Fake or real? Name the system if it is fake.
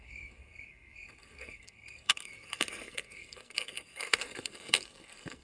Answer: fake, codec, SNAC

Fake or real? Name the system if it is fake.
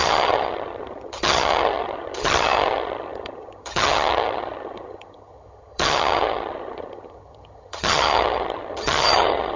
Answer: fake, vocoder, HiFi-GAN